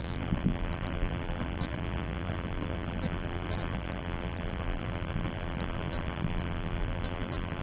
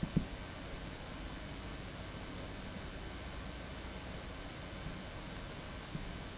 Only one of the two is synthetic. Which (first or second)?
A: first